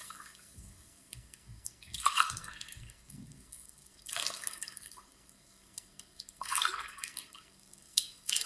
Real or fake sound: fake